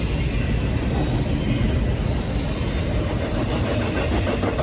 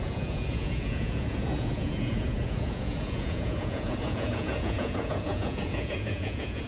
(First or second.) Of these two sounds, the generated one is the second